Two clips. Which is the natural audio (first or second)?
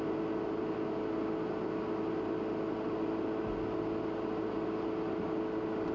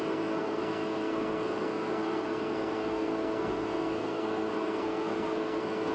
first